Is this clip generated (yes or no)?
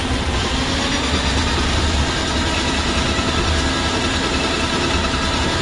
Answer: no